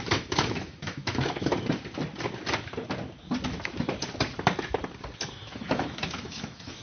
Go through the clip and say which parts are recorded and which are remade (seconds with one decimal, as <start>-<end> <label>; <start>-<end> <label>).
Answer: 0.0-1.5 remade; 1.5-5.3 recorded; 5.3-6.8 remade